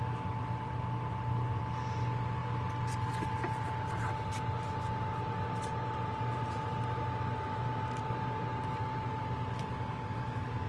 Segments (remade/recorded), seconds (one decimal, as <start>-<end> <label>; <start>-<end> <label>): 0.0-10.7 recorded